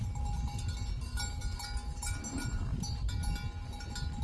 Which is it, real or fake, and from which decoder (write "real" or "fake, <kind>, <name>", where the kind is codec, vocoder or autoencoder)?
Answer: real